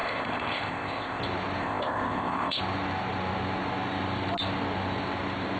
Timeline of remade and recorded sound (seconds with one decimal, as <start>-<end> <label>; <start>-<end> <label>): 0.0-1.2 remade; 1.2-1.6 recorded; 1.6-2.6 remade; 2.6-5.6 recorded